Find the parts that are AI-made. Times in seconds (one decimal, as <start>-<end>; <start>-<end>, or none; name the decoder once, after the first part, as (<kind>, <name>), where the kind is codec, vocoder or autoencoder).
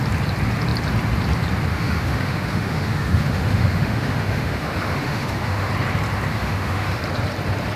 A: 1.7-5.7 (autoencoder, DAC-VAE); 6.3-7.0